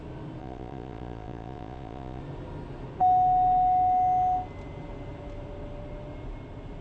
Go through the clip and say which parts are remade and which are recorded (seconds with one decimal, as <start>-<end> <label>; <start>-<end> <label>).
0.0-0.4 recorded; 0.4-2.2 remade; 2.2-6.8 recorded